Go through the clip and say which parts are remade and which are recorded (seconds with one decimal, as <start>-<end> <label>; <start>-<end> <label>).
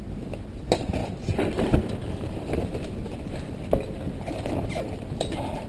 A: 0.0-5.7 recorded